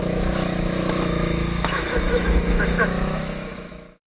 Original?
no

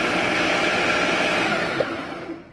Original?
yes